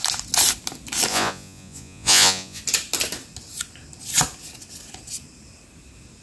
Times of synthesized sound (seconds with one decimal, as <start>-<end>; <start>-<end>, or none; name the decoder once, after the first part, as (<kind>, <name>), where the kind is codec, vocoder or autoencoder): 1.1-2.6 (vocoder, Vocos)